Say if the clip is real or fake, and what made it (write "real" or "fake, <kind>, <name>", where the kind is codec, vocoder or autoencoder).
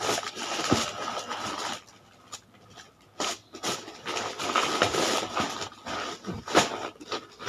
real